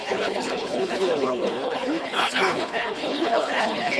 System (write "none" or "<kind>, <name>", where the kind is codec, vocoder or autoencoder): codec, HILCodec